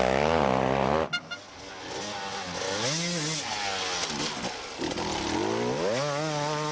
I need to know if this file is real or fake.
real